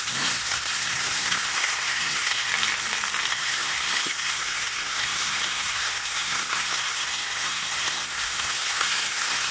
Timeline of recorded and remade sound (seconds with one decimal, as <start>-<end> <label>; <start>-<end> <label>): 0.0-2.5 remade; 2.5-3.3 recorded; 3.3-9.5 remade